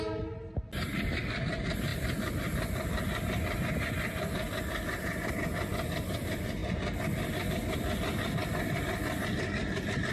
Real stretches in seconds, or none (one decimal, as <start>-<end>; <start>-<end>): 0.0-10.1